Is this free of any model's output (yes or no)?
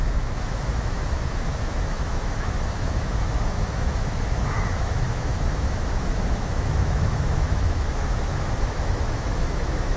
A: no